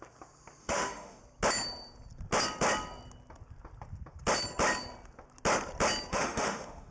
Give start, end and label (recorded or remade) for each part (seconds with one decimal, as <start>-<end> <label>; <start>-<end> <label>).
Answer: 0.0-0.6 recorded; 0.6-1.2 remade; 1.2-6.1 recorded; 6.1-6.9 remade